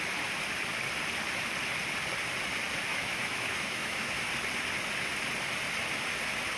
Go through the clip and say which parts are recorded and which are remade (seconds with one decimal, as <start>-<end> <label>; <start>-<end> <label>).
0.0-2.9 recorded; 2.9-4.2 remade; 4.2-6.6 recorded